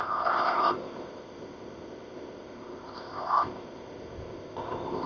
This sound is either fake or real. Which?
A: fake